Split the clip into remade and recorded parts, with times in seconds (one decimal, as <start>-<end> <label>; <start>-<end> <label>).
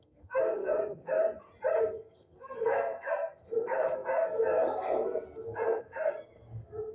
0.0-1.2 remade; 1.2-1.8 recorded; 1.8-6.9 remade